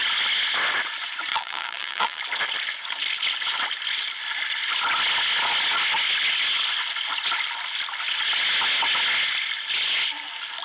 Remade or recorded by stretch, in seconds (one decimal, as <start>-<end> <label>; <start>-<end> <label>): 0.0-1.3 recorded; 1.3-2.2 remade; 2.2-10.6 recorded